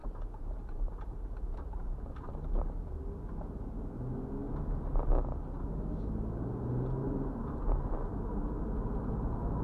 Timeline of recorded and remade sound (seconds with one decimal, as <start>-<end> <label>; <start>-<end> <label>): 0.0-2.3 remade; 2.3-7.0 recorded; 7.0-7.8 remade; 7.8-9.6 recorded